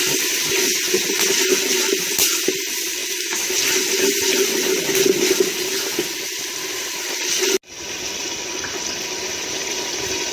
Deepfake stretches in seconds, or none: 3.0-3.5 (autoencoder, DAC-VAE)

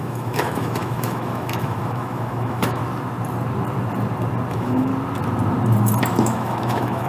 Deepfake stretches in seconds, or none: 0.0-2.8 (autoencoder, DAC-VAE); 4.5-4.9; 6.0-7.1

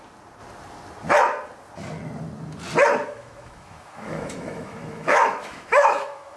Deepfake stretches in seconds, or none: 3.0-6.4 (autoencoder, DAC-VAE)

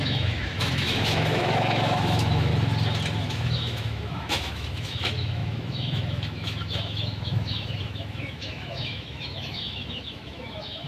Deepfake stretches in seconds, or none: 0.0-2.5 (autoencoder, DAC-VAE); 3.2-10.9